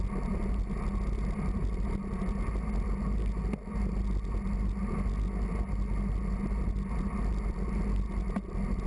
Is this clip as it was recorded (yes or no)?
yes